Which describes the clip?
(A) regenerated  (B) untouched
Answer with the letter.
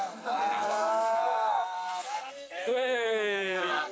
A